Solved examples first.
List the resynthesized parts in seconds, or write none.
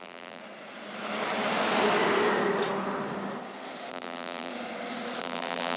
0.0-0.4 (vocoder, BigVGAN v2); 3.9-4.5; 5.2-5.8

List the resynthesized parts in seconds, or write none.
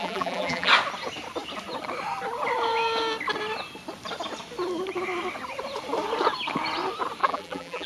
0.0-0.7 (vocoder, BigVGAN v2); 7.2-7.9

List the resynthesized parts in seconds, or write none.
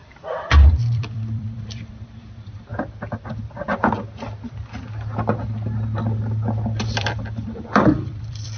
0.0-2.7 (vocoder, BigVGAN v2); 6.8-8.6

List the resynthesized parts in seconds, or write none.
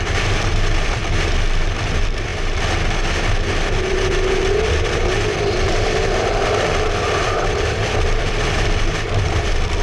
0.0-1.0 (vocoder, BigVGAN v2); 1.6-2.3; 3.5-9.8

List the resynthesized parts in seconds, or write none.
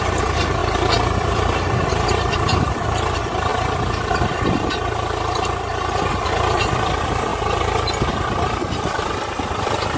0.0-0.6 (vocoder, BigVGAN v2); 1.9-3.5; 6.1-7.3; 8.1-10.0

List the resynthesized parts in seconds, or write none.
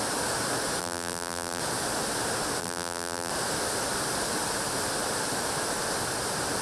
0.8-1.6 (vocoder, BigVGAN v2); 2.6-3.3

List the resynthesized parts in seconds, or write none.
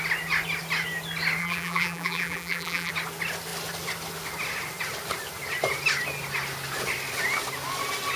1.4-2.9 (vocoder, BigVGAN v2)